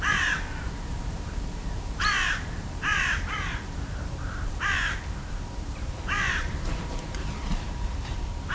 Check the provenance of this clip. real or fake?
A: fake